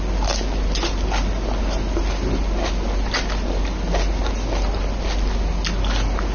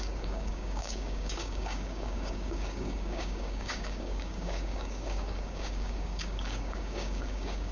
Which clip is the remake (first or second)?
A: second